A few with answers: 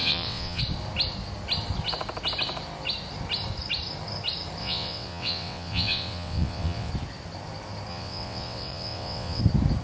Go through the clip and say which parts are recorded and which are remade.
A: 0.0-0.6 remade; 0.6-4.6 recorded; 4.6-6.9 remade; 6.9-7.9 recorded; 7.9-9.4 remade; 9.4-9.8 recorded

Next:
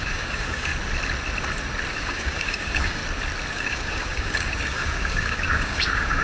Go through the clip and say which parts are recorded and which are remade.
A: 0.0-0.7 remade; 0.7-1.9 recorded; 1.9-3.0 remade; 3.0-3.5 recorded; 3.5-6.2 remade

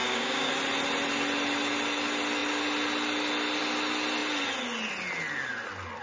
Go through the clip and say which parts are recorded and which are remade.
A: 0.0-0.5 remade; 0.5-6.0 recorded

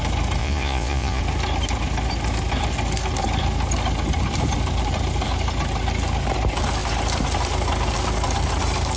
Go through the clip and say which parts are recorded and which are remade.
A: 0.0-0.4 recorded; 0.4-1.2 remade; 1.2-9.0 recorded

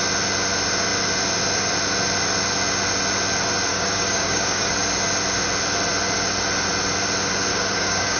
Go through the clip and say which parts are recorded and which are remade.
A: 0.0-3.7 recorded; 3.7-4.7 remade; 4.7-7.5 recorded; 7.5-8.2 remade

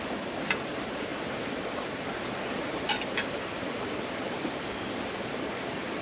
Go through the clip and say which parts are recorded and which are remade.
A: 0.0-6.0 recorded

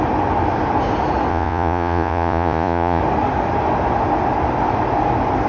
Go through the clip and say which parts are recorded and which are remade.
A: 0.0-1.3 recorded; 1.3-3.0 remade; 3.0-5.5 recorded

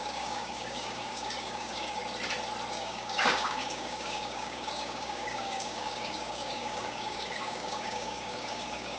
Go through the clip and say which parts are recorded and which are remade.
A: 0.0-2.0 remade; 2.0-2.7 recorded; 2.7-9.0 remade